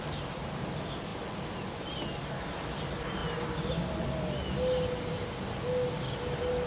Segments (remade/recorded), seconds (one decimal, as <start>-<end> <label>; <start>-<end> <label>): 0.0-6.7 recorded